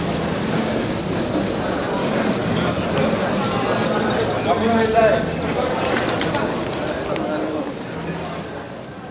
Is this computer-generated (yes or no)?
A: no